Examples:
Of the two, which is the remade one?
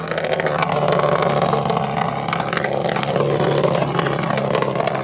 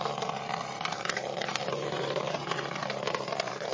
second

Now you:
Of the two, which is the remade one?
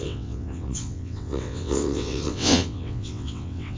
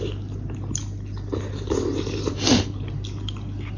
first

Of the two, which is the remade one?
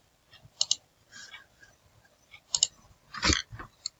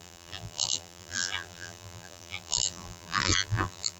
second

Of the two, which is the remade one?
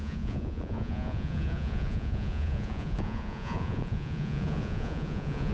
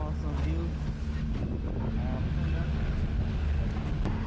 first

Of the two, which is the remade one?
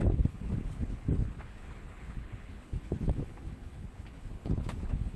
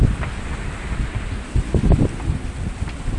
first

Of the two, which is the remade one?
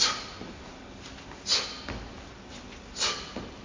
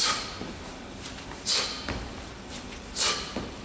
second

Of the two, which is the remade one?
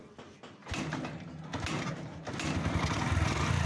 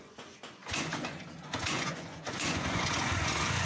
second